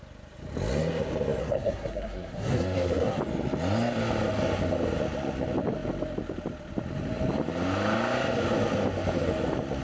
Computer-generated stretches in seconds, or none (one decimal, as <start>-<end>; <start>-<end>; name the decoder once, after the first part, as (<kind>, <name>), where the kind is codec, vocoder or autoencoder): 1.4-3.2 (codec, SNAC)